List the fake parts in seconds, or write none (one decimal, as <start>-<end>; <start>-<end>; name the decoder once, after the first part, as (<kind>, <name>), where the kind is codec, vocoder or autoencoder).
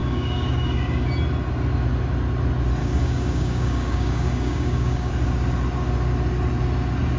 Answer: 0.0-1.1 (codec, DAC); 2.8-5.1